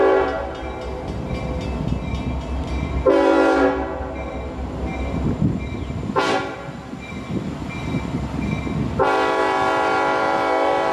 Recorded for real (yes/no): yes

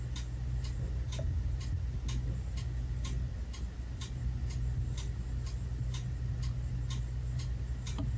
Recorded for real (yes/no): yes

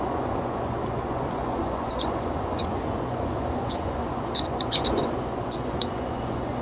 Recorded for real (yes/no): no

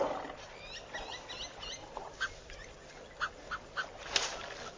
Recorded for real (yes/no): yes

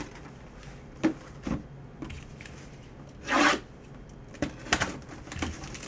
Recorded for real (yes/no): yes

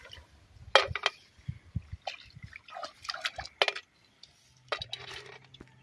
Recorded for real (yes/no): yes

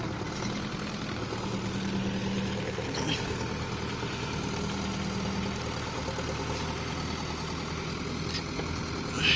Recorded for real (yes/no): yes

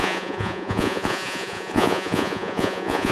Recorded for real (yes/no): no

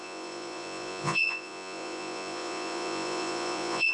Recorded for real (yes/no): no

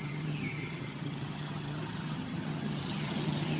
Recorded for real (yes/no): no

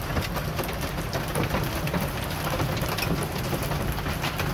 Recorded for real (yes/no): yes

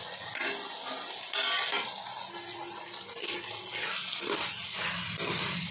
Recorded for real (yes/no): yes